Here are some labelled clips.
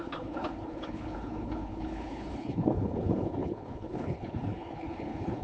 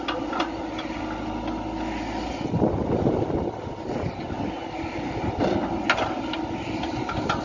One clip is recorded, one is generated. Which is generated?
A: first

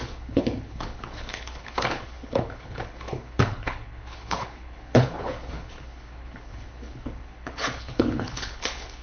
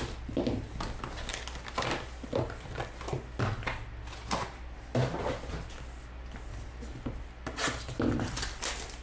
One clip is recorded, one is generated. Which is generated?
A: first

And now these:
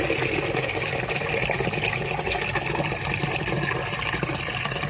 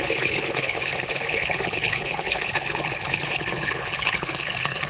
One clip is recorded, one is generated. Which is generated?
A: second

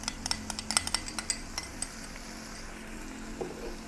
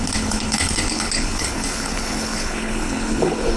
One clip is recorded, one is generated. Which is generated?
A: second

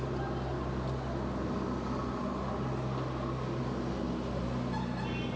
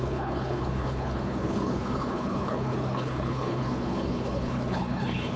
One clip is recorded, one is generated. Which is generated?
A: second